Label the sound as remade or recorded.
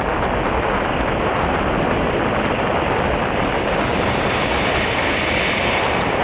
recorded